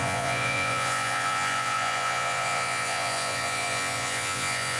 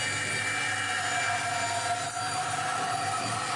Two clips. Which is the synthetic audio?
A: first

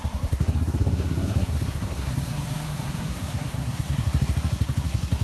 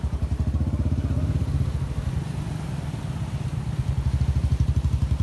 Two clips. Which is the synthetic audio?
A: first